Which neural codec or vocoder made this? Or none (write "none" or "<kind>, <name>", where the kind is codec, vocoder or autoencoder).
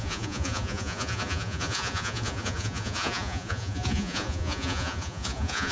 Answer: vocoder, Vocos